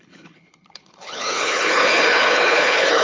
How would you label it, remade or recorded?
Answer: remade